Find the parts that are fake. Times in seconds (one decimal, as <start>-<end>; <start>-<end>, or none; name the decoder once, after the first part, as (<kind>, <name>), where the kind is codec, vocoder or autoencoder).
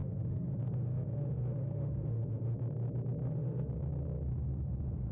0.0-2.6 (autoencoder, DAC-VAE); 3.2-3.7